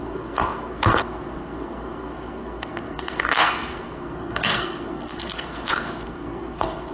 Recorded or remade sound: remade